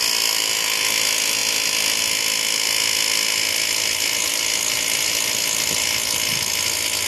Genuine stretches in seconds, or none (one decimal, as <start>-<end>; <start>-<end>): 0.0-7.1